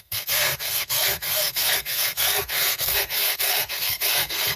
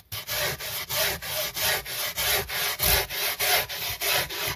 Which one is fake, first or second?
first